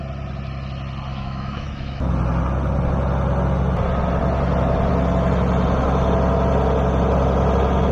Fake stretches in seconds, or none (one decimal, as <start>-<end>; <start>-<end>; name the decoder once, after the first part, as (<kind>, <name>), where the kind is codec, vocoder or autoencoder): 1.1-2.1 (autoencoder, DAC-VAE)